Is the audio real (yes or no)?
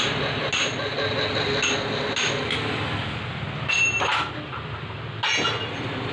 yes